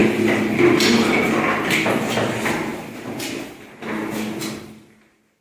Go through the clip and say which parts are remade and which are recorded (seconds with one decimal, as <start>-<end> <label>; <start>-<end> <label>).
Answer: 0.0-1.2 remade; 1.2-5.4 recorded